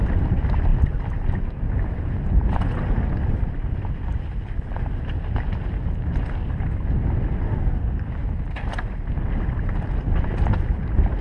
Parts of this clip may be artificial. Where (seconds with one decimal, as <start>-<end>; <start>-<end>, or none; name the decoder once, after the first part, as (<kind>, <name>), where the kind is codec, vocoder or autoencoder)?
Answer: none